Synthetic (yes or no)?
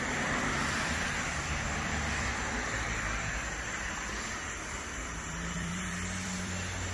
yes